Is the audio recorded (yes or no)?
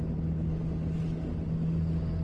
yes